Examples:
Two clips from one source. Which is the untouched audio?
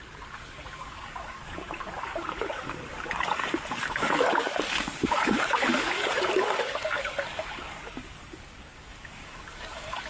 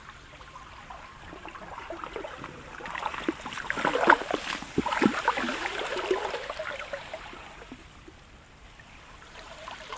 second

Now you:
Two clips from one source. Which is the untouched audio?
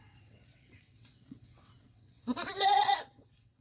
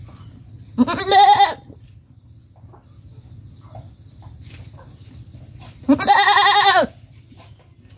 second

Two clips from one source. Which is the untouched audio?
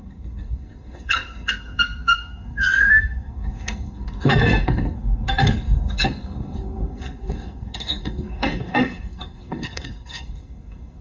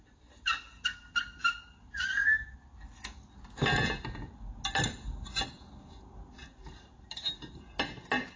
second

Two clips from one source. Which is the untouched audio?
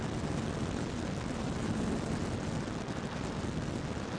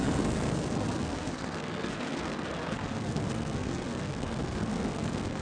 first